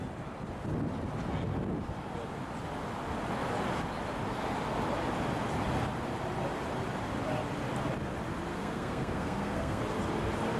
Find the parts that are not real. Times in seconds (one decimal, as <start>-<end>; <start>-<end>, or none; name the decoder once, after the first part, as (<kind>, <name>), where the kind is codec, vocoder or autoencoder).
8.5-9.8 (codec, SNAC)